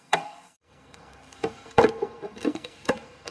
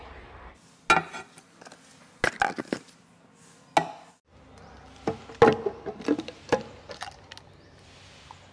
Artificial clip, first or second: first